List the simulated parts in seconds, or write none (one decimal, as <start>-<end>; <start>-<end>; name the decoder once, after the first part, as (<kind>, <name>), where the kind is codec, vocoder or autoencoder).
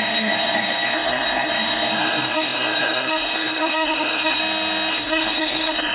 0.0-4.4 (codec, SNAC); 4.9-5.9